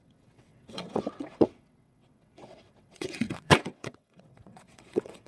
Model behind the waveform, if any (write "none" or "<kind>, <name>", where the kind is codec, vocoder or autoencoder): vocoder, WaveNeXt